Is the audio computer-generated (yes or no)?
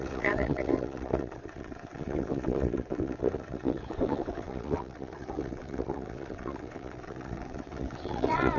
yes